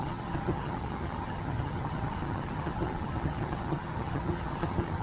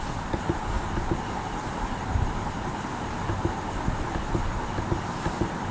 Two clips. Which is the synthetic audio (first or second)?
first